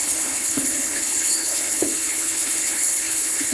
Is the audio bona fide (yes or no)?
no